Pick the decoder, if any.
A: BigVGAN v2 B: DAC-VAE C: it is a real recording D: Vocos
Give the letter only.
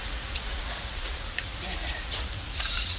D